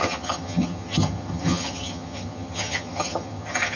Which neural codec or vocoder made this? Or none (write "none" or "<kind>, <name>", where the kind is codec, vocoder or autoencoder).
vocoder, HiFi-GAN